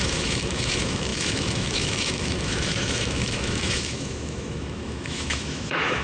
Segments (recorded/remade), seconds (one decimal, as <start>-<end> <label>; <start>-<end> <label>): 0.0-6.0 remade